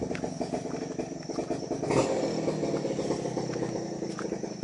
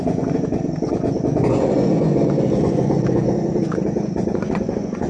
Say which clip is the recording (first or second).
first